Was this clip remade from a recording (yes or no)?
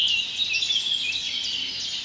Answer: no